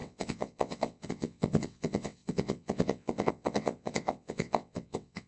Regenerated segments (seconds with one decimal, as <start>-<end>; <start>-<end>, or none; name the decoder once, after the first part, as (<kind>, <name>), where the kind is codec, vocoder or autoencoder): 0.0-5.3 (vocoder, WaveNeXt)